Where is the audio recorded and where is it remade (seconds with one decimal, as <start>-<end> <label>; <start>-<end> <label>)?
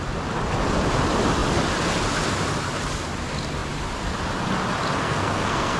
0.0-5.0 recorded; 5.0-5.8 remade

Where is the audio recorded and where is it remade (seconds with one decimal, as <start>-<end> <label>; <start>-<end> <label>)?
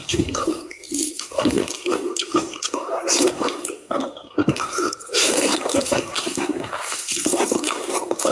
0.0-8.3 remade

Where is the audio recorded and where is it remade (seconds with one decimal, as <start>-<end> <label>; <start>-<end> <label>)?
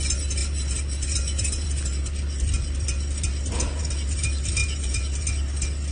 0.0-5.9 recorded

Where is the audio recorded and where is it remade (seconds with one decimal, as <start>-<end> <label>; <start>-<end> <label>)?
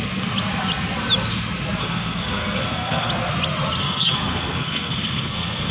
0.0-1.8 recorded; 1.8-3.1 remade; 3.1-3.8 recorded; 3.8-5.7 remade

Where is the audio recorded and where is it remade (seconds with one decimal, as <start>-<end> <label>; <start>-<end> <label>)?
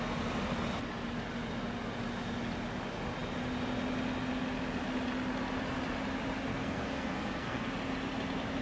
0.0-6.5 recorded; 6.5-7.7 remade; 7.7-8.6 recorded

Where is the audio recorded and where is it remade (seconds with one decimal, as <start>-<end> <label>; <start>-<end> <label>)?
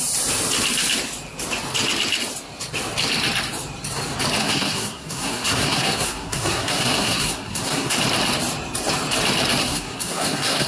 0.0-4.4 recorded; 4.4-8.0 remade; 8.0-9.6 recorded; 9.6-10.7 remade